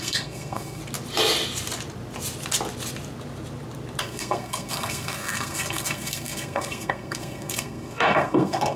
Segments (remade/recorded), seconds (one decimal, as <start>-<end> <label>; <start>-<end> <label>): 0.0-0.8 remade; 0.8-4.0 recorded; 4.0-8.8 remade